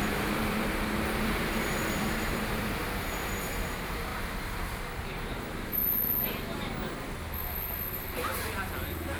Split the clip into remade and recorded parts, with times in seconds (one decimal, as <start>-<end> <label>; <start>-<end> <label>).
0.0-5.8 remade; 5.8-9.2 recorded